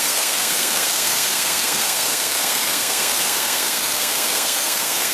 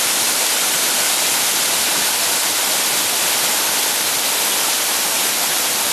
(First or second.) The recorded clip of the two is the second